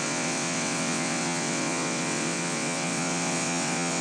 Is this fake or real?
fake